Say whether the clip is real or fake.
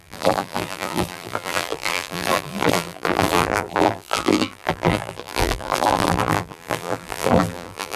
fake